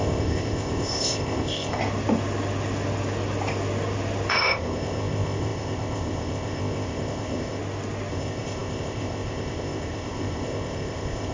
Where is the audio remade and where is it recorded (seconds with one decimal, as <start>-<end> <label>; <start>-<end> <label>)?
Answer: 0.0-1.8 remade; 1.8-4.3 recorded; 4.3-7.6 remade; 7.6-8.1 recorded; 8.1-11.3 remade